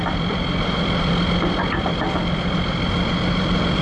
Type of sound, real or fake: fake